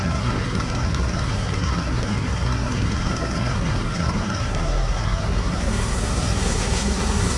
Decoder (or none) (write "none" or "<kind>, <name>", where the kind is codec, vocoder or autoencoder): codec, SNAC